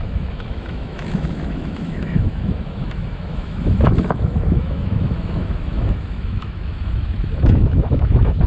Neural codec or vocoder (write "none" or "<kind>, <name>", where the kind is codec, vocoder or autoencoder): autoencoder, DAC-VAE